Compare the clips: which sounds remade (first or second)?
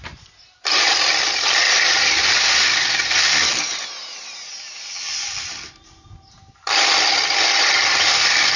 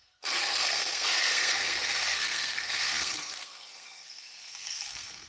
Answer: second